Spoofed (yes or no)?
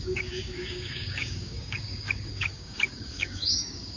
yes